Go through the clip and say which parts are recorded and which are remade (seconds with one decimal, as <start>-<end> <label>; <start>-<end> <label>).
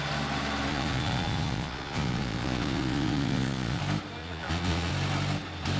0.0-0.7 recorded; 0.7-3.8 remade; 3.8-4.2 recorded; 4.2-4.9 remade; 4.9-5.8 recorded